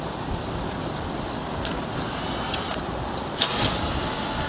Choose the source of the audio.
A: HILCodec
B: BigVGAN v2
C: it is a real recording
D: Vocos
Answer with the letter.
C